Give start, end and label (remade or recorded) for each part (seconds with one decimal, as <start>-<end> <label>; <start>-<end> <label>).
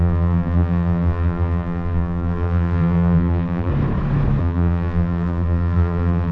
0.0-3.7 remade; 3.7-4.4 recorded; 4.4-6.3 remade